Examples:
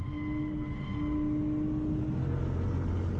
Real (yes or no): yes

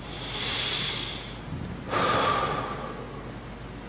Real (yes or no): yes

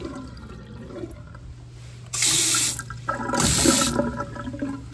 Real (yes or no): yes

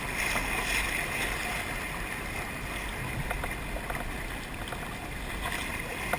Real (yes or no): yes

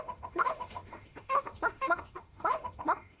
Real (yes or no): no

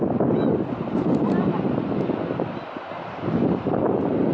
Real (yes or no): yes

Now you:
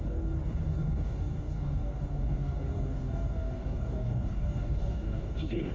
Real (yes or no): no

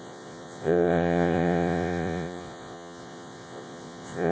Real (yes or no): no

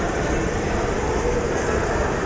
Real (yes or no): yes